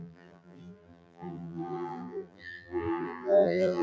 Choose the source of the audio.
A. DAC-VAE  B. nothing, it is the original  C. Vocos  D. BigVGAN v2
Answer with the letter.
D